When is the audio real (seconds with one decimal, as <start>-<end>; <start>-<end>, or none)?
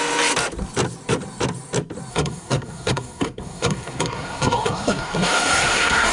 0.0-2.1